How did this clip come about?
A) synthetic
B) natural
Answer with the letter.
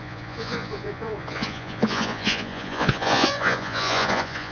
A